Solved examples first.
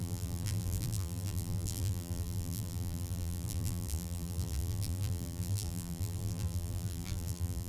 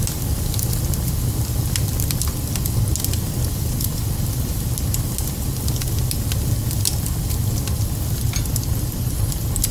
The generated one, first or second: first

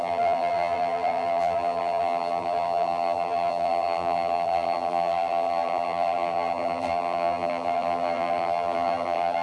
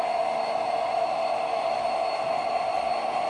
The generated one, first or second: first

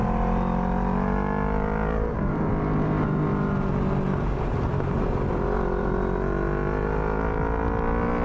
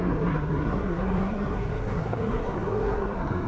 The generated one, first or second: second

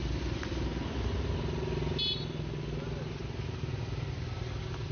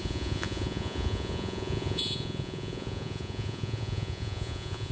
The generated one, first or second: second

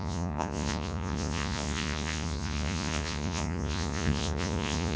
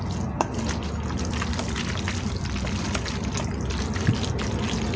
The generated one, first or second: first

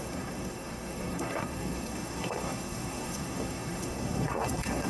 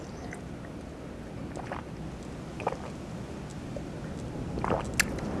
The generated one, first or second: first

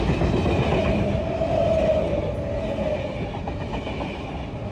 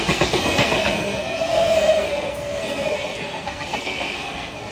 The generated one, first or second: second